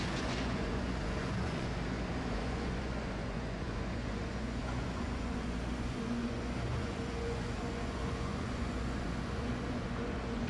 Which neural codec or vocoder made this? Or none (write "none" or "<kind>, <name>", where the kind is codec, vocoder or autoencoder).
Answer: vocoder, Vocos